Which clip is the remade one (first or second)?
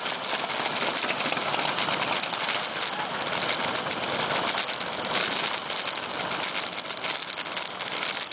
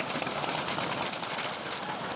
second